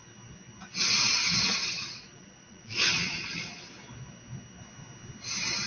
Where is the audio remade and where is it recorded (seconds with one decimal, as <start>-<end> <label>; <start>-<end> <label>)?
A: 0.0-1.2 recorded; 1.2-3.6 remade; 3.6-5.7 recorded